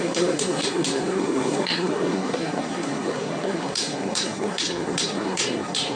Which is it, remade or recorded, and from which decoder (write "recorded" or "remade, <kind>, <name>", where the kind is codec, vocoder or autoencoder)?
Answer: remade, codec, SNAC